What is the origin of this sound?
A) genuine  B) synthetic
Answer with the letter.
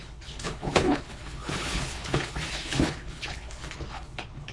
B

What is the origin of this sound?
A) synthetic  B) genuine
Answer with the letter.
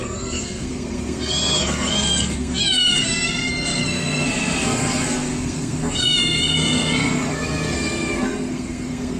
A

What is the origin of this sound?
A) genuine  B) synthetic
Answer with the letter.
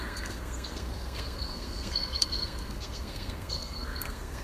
B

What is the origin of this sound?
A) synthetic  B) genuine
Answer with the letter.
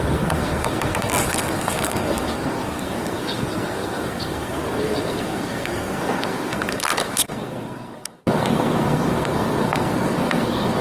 A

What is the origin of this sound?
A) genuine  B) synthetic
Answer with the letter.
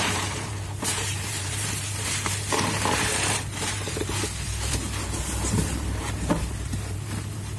B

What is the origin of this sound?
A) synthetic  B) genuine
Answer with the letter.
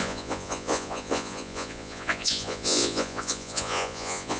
A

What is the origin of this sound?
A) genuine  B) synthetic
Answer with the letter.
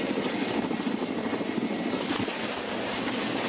A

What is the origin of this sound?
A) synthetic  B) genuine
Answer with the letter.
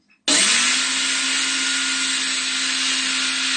B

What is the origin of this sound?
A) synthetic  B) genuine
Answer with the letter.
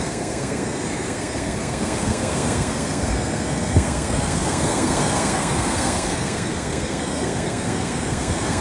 A